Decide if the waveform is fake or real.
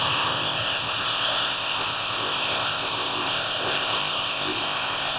fake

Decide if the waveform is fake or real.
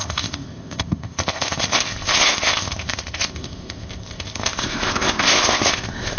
fake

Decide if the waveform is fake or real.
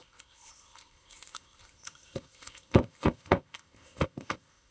fake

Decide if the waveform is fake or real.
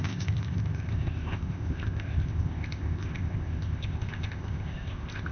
fake